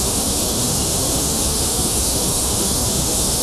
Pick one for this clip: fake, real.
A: fake